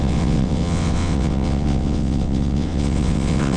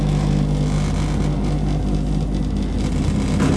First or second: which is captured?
second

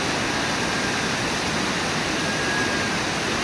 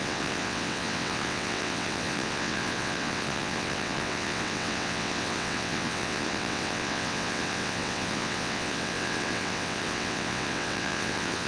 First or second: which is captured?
first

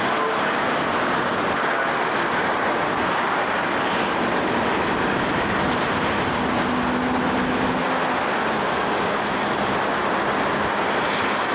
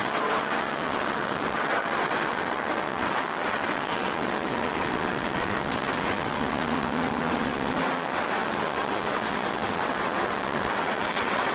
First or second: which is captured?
first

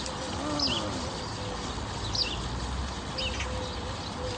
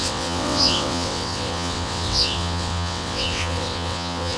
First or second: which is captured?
first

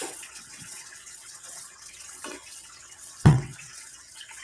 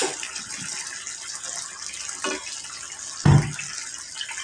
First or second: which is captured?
second